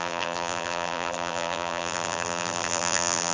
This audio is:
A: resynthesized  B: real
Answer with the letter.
A